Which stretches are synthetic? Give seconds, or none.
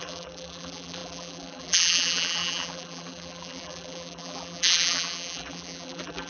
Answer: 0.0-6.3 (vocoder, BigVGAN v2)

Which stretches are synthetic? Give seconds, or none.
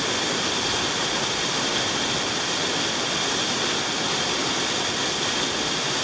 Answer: none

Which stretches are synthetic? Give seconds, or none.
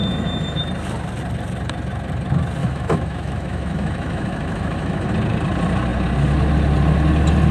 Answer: 0.0-0.6 (autoencoder, DAC-VAE); 2.6-5.1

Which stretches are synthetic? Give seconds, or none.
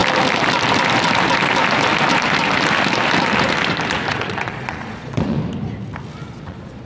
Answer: 4.1-5.4 (vocoder, Vocos); 6.3-6.9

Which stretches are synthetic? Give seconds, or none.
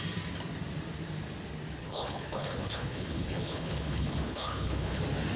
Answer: 1.8-5.0 (codec, HILCodec)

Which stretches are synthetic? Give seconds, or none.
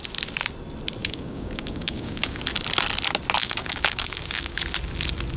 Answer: 1.0-2.4 (codec, DAC); 3.4-4.6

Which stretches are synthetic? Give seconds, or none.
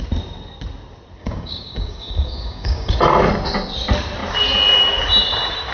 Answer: 1.2-3.0 (codec, DAC)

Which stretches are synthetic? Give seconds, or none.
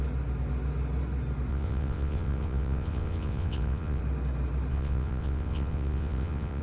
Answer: 1.5-4.0 (vocoder, WaveNeXt); 4.7-6.6